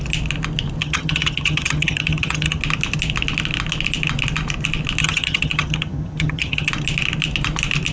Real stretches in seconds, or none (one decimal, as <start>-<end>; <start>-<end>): 0.0-0.8; 2.6-5.0; 6.7-7.9